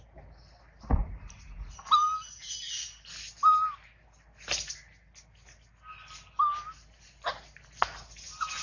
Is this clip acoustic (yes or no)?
yes